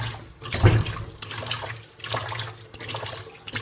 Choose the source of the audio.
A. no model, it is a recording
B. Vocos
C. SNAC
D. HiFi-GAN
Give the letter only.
A